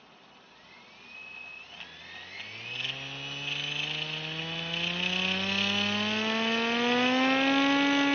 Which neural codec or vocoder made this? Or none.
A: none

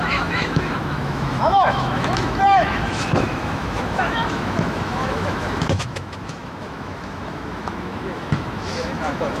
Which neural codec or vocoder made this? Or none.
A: autoencoder, DAC-VAE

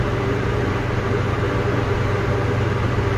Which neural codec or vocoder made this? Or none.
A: none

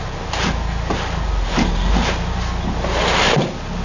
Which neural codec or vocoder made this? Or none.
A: none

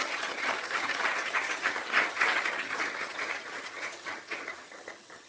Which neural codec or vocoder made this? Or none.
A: vocoder, HiFi-GAN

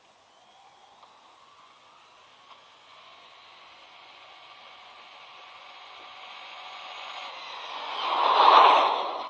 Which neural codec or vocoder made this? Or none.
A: vocoder, Vocos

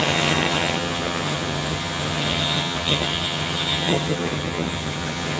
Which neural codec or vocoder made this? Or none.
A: vocoder, HiFi-GAN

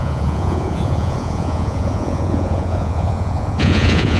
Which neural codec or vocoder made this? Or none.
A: vocoder, Vocos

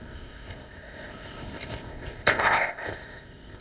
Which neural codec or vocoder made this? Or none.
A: codec, ZipCodec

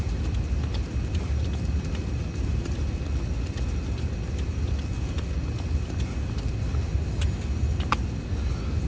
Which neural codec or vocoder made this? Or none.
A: none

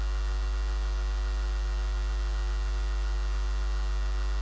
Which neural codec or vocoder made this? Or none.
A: none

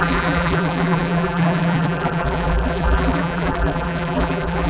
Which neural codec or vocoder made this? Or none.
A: vocoder, BigVGAN v2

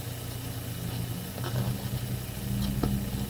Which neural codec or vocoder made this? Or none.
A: none